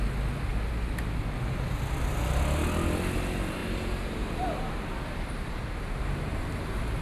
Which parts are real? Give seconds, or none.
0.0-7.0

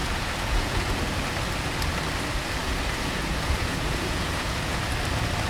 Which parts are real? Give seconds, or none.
1.0-2.6; 4.8-5.5